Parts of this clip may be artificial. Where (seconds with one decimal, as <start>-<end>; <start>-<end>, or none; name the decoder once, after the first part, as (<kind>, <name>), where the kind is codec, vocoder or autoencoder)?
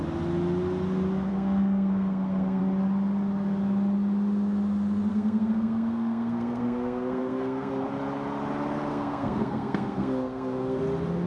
1.3-2.6 (codec, SNAC); 5.1-7.7; 8.9-10.8